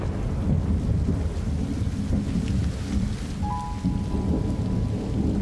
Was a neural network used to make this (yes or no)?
no